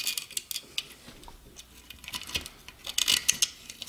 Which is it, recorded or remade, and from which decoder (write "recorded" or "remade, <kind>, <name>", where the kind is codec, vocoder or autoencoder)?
recorded